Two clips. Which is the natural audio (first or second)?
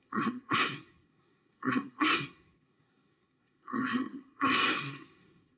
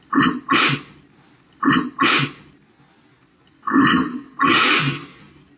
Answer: second